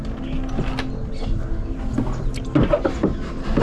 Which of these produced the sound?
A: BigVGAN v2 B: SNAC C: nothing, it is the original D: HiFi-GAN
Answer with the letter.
C